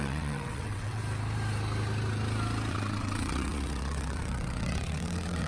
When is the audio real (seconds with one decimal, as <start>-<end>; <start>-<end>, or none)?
1.0-2.7